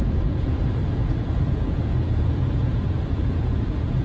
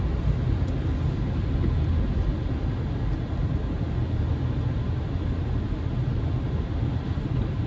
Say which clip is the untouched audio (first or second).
second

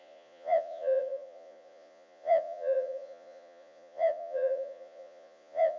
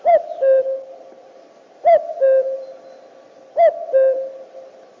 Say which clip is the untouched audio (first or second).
second